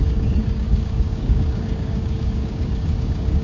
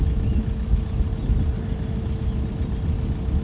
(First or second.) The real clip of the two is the second